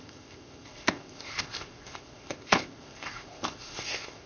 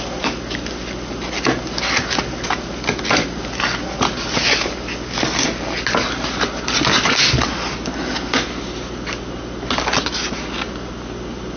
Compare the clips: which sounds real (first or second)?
second